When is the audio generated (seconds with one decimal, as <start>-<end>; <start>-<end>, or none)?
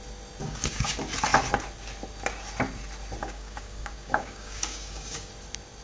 0.4-0.9; 3.2-5.3